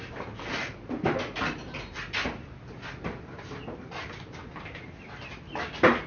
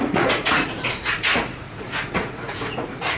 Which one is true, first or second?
first